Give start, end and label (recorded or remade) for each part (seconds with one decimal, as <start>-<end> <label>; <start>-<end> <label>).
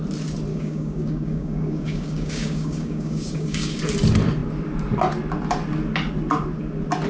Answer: 0.0-0.5 recorded; 0.5-3.8 remade; 3.8-7.1 recorded